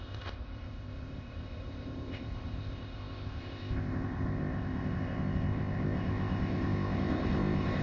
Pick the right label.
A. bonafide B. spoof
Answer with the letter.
B